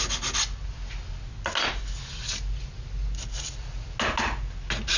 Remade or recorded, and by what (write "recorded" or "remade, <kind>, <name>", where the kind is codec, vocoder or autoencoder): recorded